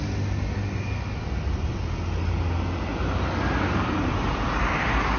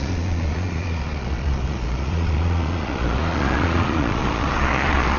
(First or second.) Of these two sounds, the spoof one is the second